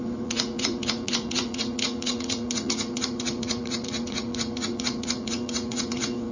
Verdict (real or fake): fake